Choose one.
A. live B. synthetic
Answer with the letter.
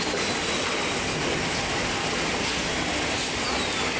A